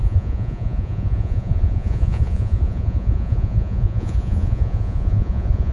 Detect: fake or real fake